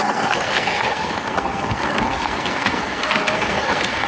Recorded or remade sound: remade